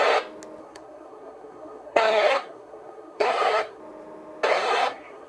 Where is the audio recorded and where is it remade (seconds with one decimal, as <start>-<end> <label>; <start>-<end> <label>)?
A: 0.0-0.6 recorded; 0.6-3.8 remade; 3.8-4.5 recorded; 4.5-5.3 remade